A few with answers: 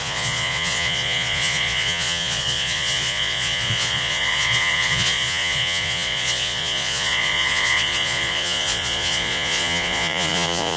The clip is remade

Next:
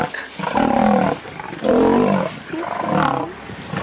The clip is recorded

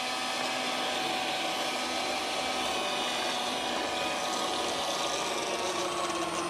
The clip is recorded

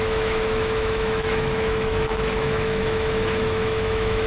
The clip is remade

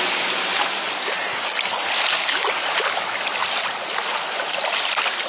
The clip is recorded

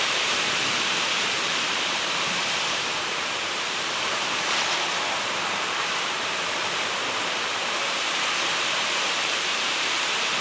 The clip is remade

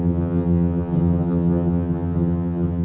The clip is remade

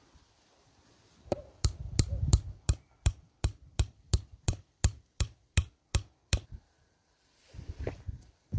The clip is remade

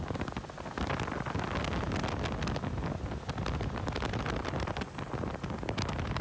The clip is recorded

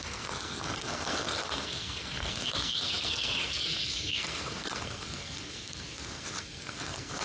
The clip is remade